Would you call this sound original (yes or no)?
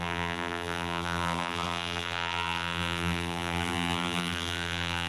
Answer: no